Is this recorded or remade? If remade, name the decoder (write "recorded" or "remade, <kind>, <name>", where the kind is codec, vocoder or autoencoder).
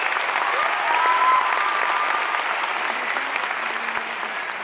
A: recorded